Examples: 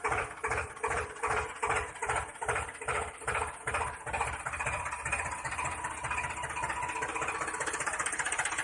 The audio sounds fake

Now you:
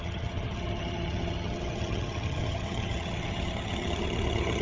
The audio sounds fake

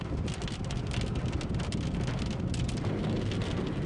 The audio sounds real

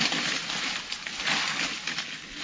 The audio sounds real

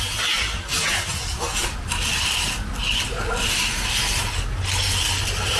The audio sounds real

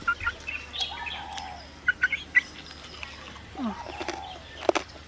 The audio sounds real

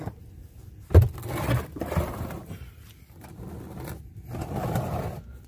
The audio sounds real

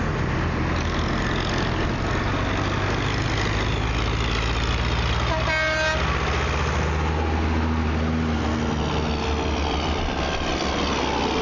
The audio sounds real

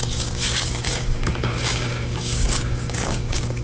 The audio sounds fake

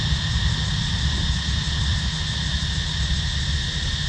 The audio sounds real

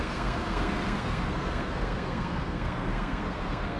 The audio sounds fake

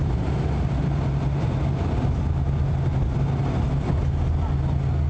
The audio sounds real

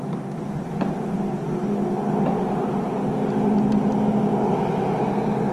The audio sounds real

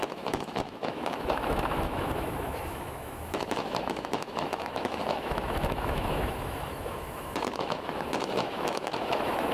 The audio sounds fake